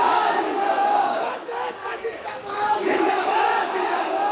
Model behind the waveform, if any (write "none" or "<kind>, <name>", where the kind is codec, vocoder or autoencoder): codec, DAC